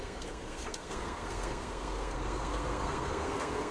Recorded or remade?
remade